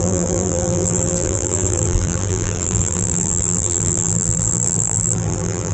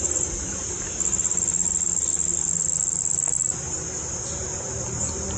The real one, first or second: second